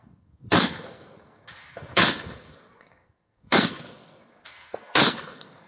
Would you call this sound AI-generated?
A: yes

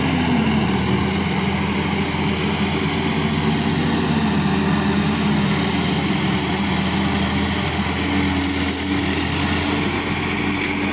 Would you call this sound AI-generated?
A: no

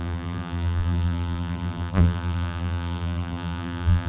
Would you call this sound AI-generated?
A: yes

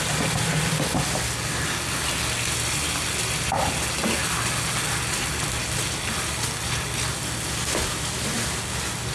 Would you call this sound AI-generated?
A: no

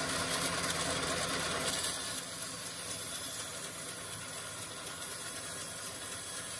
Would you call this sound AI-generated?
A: no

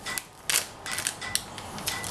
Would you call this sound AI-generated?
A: no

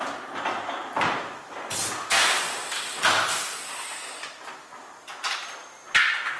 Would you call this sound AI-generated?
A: no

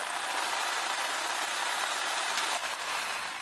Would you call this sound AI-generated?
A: no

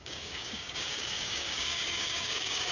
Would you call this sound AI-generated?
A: yes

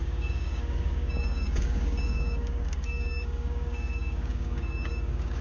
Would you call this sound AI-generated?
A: yes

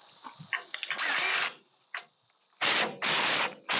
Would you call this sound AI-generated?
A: no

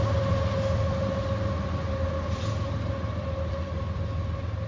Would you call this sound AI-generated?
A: no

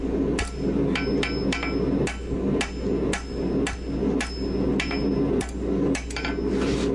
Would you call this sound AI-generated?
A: no